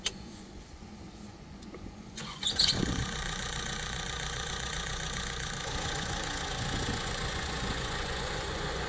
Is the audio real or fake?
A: fake